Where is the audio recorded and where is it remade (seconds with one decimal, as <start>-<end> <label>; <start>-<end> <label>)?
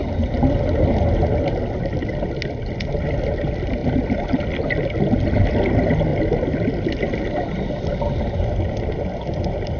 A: 0.0-3.8 recorded; 3.8-4.7 remade; 4.7-6.1 recorded; 6.1-6.6 remade; 6.6-9.8 recorded